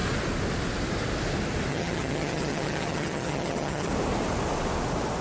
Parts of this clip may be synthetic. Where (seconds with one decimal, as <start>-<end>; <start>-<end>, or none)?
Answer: 1.7-3.9